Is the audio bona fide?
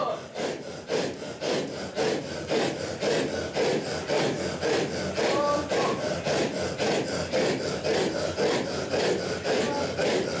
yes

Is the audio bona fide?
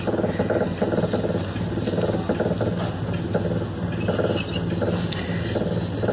yes